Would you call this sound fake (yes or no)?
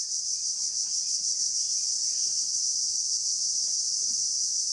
no